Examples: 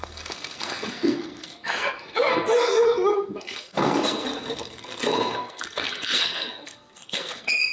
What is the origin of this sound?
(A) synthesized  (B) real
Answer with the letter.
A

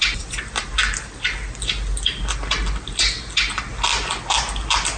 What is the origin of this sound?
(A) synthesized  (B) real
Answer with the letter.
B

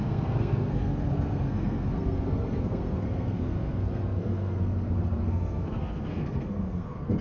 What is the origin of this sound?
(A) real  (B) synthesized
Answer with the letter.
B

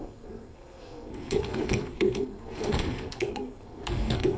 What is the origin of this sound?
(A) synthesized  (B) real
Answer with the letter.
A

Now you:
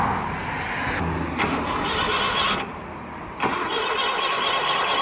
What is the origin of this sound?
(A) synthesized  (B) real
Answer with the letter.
B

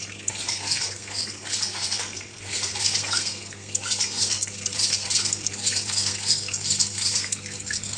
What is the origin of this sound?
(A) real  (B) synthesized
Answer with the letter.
B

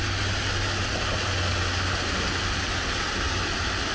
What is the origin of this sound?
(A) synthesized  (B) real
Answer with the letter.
B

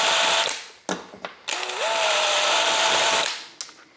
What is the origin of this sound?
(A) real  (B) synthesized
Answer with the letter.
A